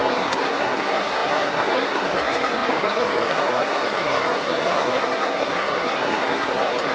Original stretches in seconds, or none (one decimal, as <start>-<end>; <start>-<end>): none